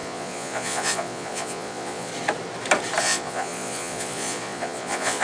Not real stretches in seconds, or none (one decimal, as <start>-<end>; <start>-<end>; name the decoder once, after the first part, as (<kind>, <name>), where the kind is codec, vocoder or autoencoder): 0.0-2.1 (vocoder, Vocos); 3.0-5.2